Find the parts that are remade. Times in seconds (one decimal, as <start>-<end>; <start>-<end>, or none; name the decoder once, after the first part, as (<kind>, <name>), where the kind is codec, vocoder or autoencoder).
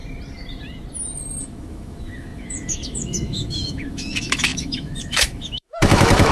1.4-6.3 (autoencoder, DAC-VAE)